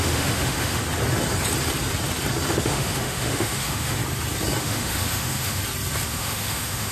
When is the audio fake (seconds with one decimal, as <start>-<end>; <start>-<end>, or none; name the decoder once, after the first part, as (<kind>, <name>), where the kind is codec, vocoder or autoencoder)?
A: 0.0-0.8 (autoencoder, DAC-VAE); 2.5-4.0; 4.6-5.6; 6.1-6.9